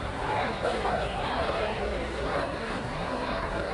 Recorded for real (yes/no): no